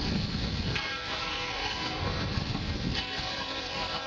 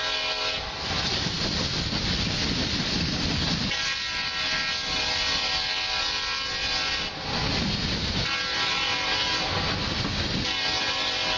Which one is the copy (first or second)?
first